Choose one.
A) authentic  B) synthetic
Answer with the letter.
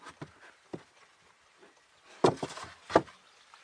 A